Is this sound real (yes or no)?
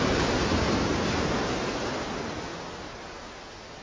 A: yes